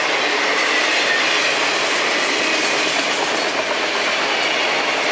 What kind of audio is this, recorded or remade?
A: recorded